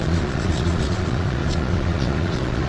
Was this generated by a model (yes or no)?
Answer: yes